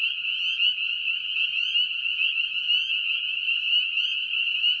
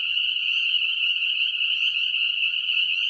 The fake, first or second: second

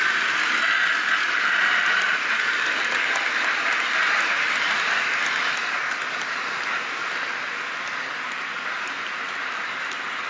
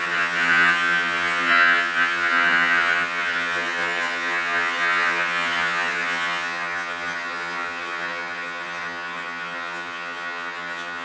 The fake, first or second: second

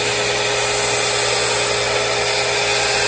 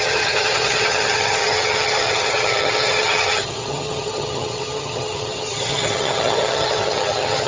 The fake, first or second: second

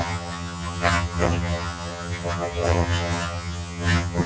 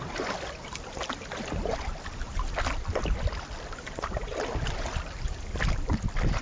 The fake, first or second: first